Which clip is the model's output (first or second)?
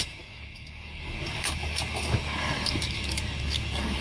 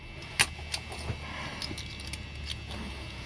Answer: first